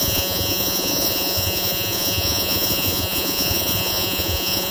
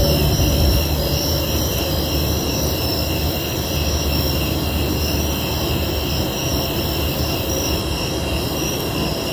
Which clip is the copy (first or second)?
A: first